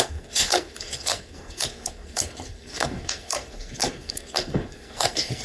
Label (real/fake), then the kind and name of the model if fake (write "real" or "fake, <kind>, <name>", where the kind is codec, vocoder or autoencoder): fake, codec, SNAC